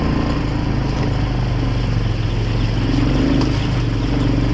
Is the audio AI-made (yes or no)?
no